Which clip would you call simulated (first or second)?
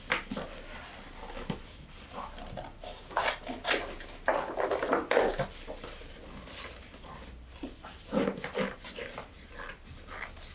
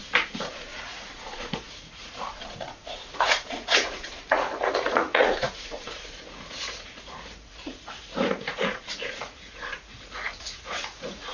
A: second